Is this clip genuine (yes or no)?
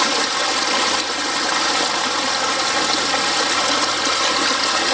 yes